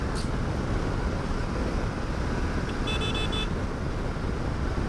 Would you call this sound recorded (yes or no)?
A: yes